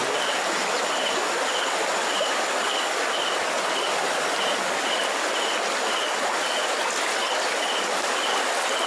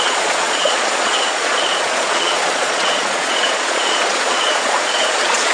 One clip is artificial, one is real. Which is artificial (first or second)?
second